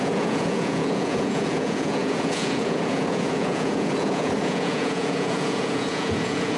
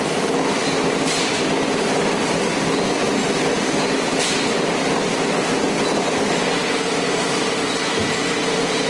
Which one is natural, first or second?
second